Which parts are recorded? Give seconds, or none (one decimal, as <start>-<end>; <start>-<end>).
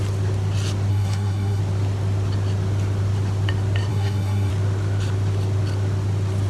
0.0-0.9; 1.6-3.9; 4.5-6.5